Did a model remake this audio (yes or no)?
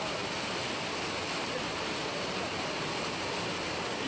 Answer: no